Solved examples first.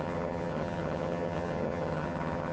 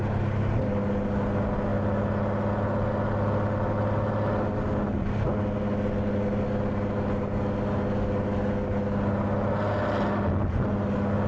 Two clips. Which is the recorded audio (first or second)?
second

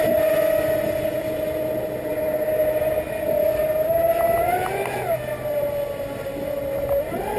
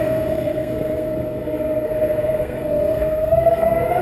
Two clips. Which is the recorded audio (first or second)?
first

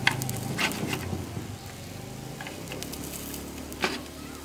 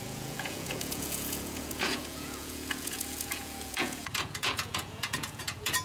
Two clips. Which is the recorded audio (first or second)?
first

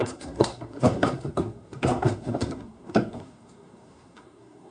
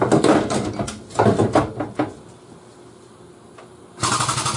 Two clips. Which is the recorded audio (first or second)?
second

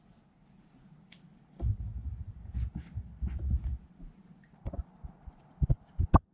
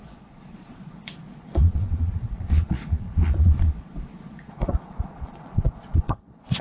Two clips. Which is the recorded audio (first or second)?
first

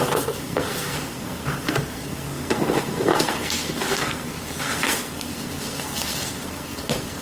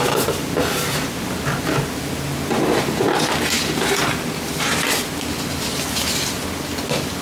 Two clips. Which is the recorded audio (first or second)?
second